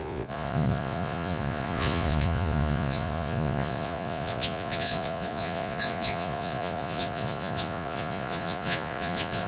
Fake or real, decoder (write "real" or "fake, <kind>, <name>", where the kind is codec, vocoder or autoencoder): fake, vocoder, Vocos